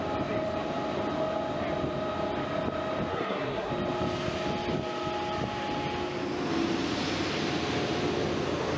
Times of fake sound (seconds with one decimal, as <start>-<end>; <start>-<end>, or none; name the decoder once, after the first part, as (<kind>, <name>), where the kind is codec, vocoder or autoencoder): 3.1-3.7 (codec, SNAC)